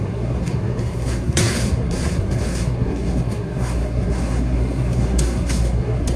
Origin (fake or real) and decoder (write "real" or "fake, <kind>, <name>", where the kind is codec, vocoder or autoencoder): fake, codec, SNAC